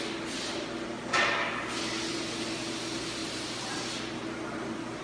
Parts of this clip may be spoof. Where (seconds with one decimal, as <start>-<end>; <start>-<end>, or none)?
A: none